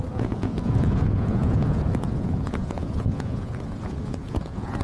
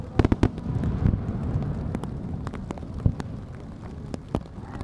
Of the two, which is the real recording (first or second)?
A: second